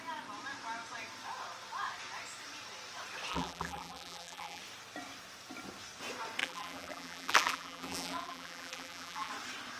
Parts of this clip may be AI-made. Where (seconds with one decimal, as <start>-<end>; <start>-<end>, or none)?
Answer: 3.3-4.6; 6.4-9.3